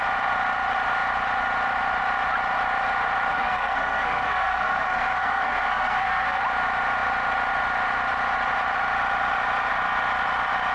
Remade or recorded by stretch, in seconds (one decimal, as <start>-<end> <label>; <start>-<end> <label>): 0.0-3.3 recorded; 3.3-6.4 remade; 6.4-10.7 recorded